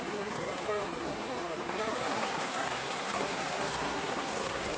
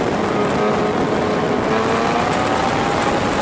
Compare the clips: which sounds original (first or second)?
second